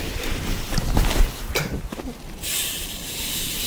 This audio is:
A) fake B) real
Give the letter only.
B